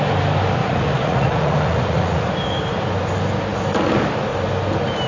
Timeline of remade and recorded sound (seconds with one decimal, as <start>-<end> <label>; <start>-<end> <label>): 0.0-0.6 recorded; 0.6-2.3 remade; 2.3-5.1 recorded